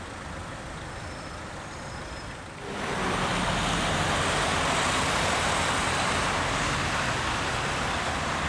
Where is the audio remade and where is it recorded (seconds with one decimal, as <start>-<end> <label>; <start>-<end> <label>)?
0.0-8.5 recorded